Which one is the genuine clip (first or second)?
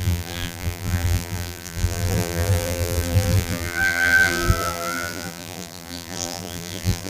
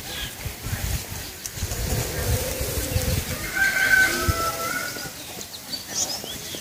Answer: second